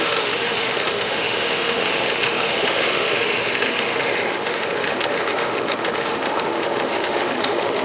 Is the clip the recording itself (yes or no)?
no